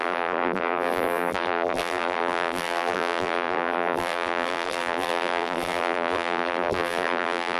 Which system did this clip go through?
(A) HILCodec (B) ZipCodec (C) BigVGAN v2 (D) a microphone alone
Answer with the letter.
C